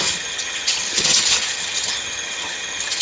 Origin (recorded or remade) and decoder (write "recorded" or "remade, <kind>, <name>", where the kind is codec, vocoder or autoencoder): remade, vocoder, HiFi-GAN